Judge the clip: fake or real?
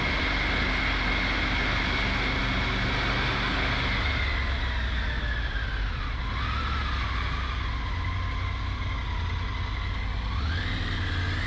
real